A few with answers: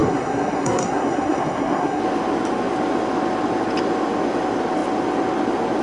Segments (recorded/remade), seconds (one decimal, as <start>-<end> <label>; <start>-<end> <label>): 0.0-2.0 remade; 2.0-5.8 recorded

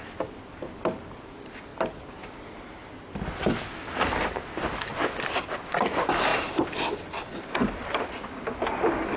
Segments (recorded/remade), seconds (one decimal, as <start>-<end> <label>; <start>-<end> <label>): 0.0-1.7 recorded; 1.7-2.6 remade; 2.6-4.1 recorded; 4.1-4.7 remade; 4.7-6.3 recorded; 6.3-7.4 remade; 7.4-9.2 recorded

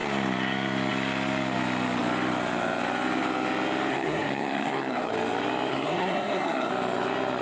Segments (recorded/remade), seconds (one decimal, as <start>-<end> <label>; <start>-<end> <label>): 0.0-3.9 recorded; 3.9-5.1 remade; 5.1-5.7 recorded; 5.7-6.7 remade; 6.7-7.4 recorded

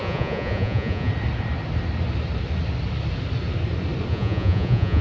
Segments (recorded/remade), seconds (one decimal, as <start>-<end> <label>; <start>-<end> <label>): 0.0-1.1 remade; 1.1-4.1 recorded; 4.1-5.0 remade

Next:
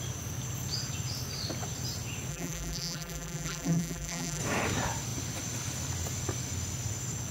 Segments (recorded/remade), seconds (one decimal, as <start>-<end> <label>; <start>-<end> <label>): 0.0-2.3 recorded; 2.3-4.4 remade; 4.4-7.3 recorded

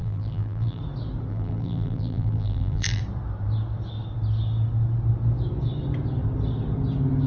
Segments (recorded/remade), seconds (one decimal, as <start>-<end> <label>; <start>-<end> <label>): 0.0-0.8 remade; 0.8-1.3 recorded; 1.3-3.0 remade; 3.0-7.3 recorded